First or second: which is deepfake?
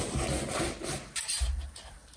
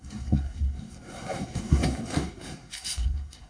second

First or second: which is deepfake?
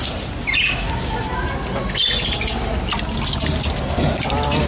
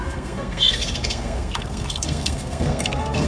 second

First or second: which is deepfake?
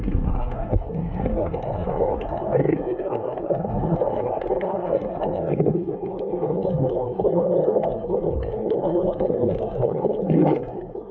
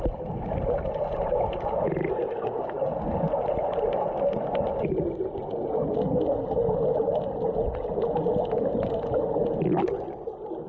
first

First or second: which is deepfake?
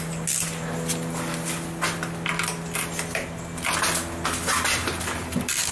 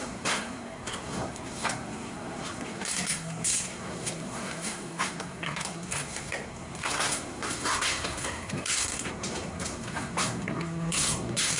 second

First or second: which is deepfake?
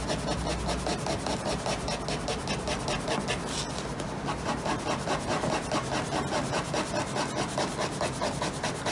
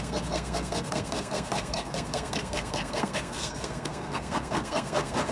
second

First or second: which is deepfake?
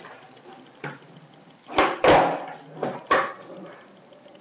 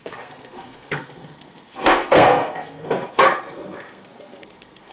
second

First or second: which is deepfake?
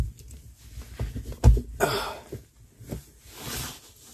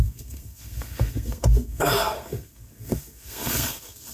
second